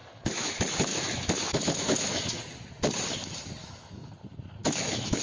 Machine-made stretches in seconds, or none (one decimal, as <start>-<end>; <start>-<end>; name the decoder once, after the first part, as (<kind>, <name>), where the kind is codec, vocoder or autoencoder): 0.0-0.5 (autoencoder, DAC-VAE); 0.9-2.4; 3.6-4.1; 4.6-5.2